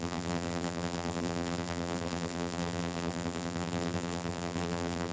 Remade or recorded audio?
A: remade